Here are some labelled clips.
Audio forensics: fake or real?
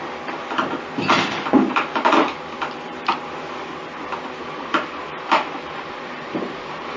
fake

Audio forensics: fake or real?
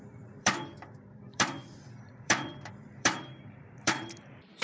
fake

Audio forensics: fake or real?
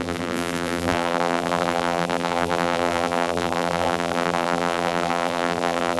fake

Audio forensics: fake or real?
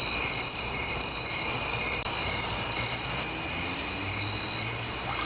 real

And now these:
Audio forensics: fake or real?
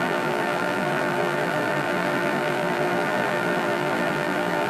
fake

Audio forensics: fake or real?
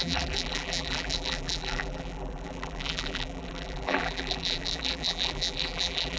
fake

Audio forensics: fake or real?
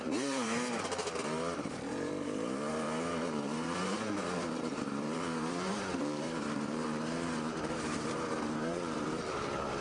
fake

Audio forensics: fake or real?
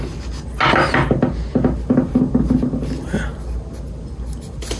real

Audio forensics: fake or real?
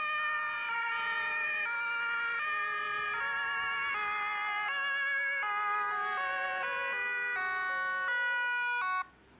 real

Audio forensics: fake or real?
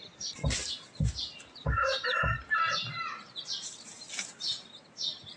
real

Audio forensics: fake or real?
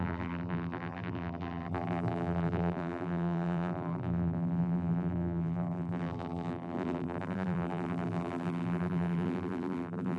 fake